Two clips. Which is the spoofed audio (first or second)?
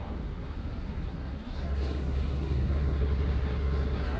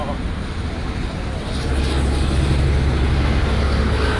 first